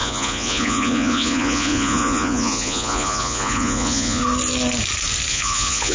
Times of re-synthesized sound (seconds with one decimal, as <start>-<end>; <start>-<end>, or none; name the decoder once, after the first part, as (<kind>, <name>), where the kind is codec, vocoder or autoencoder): 0.0-4.2 (vocoder, Vocos); 5.3-5.9